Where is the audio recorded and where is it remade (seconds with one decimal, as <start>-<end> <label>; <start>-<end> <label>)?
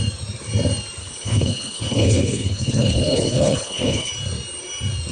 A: 0.0-1.0 recorded; 1.0-4.1 remade; 4.1-5.1 recorded